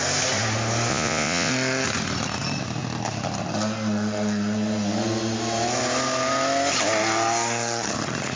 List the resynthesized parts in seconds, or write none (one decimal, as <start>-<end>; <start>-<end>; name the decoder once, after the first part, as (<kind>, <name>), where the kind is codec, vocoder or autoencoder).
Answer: 0.9-1.5 (vocoder, Vocos)